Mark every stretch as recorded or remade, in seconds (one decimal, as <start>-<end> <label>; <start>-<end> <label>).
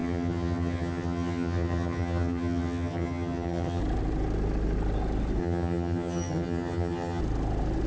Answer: 0.0-3.8 remade; 3.8-5.4 recorded; 5.4-7.2 remade; 7.2-7.9 recorded